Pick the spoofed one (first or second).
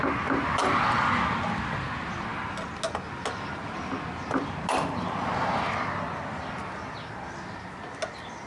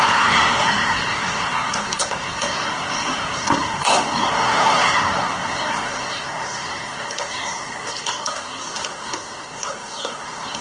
second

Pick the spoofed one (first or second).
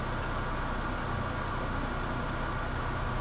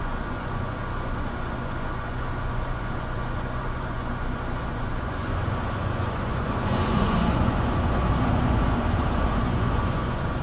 second